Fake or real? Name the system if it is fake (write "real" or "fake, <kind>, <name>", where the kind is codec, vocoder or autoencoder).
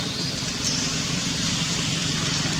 real